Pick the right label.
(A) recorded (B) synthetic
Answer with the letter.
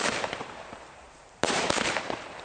B